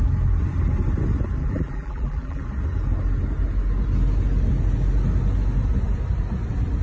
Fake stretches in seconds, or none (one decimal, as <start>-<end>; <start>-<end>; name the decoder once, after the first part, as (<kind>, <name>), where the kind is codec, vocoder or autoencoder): 1.4-2.4 (vocoder, BigVGAN v2)